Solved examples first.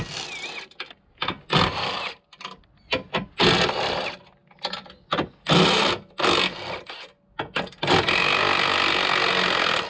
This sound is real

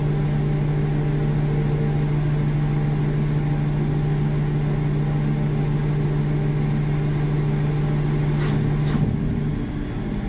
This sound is real